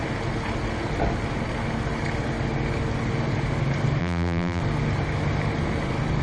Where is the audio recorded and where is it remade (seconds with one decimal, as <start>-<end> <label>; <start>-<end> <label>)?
0.0-4.0 recorded; 4.0-4.6 remade; 4.6-6.2 recorded